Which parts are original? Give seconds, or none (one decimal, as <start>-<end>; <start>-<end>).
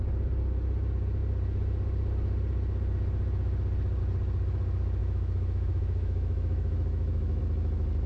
0.0-5.0; 7.4-8.1